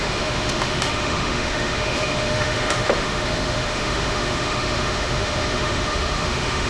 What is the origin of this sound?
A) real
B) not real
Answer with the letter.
B